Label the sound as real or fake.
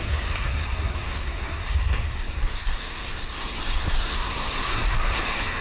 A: fake